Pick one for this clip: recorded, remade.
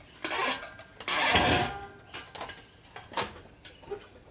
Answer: recorded